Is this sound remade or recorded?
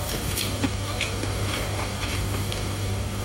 remade